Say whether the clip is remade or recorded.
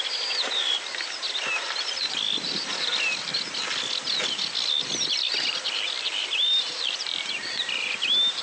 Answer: recorded